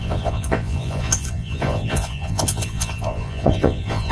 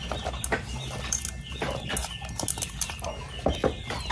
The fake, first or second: first